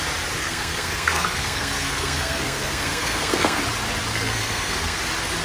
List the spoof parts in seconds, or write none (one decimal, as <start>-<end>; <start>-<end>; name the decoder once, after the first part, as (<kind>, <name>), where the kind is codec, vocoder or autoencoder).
0.4-3.6 (codec, SNAC); 4.1-5.0